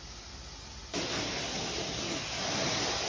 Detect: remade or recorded recorded